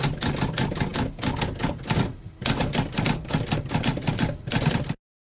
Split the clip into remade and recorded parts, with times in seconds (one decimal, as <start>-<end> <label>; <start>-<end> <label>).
0.0-5.4 recorded